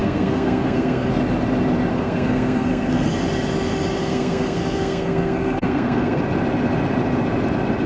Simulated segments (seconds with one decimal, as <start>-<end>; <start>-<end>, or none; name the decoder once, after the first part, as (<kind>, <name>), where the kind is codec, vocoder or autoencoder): 0.0-1.1 (codec, SNAC); 1.9-3.1; 4.0-6.2

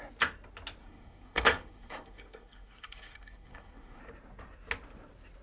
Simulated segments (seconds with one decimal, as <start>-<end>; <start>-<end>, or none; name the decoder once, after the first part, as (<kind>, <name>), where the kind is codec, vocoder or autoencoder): 0.8-4.0 (codec, SNAC)

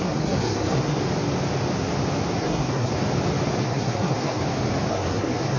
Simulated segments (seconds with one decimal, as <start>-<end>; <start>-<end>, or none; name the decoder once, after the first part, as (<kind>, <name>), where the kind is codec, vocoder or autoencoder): 0.0-1.0 (codec, SNAC); 2.4-2.9; 3.6-4.4; 4.9-5.6

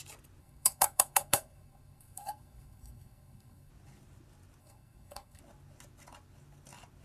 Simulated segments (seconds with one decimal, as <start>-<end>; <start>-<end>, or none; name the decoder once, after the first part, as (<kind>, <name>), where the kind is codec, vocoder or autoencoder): 0.4-3.7 (codec, SNAC); 4.6-5.4

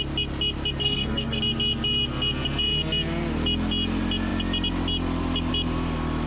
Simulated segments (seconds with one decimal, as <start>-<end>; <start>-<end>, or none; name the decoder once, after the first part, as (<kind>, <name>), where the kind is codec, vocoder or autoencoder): 0.8-1.4 (codec, SNAC)